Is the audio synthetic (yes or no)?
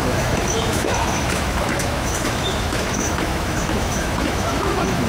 yes